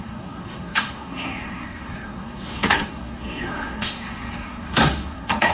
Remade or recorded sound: remade